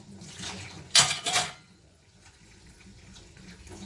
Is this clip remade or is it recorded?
remade